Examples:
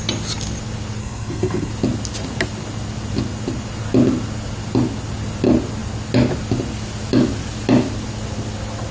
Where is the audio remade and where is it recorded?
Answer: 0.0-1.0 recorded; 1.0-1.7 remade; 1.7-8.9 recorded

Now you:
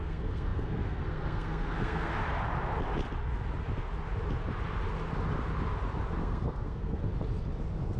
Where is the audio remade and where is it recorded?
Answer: 0.0-2.2 remade; 2.2-6.2 recorded; 6.2-7.1 remade; 7.1-8.0 recorded

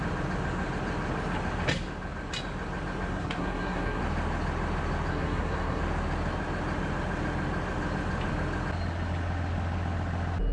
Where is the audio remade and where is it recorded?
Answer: 0.0-3.1 recorded; 3.1-4.0 remade; 4.0-5.1 recorded; 5.1-5.8 remade; 5.8-10.5 recorded

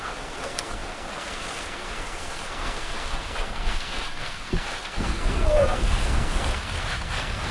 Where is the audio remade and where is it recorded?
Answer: 0.0-7.5 remade

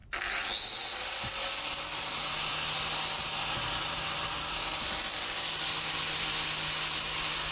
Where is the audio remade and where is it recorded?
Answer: 0.0-7.5 recorded

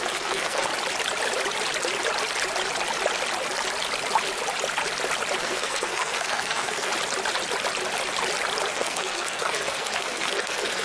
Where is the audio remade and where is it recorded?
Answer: 0.0-0.7 remade; 0.7-5.4 recorded; 5.4-6.9 remade; 6.9-8.7 recorded; 8.7-10.8 remade

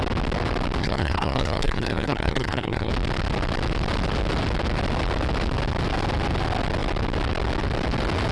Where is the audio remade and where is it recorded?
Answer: 0.0-0.8 recorded; 0.8-2.9 remade; 2.9-8.3 recorded